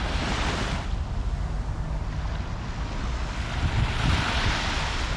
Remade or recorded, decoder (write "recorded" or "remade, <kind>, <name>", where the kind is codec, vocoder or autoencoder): recorded